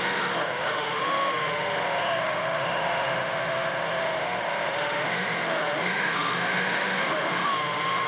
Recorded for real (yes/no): no